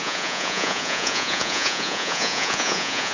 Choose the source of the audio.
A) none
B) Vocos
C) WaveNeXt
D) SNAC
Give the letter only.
B